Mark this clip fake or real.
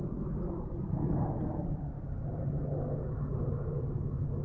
real